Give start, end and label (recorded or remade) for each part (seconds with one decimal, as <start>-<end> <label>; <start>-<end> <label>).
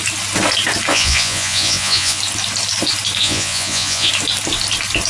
0.0-0.9 recorded; 0.9-2.2 remade; 2.2-3.2 recorded; 3.2-4.1 remade; 4.1-5.1 recorded